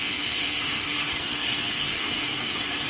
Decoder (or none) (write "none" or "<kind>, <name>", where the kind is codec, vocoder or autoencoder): codec, SNAC